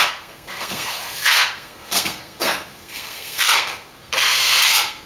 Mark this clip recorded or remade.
remade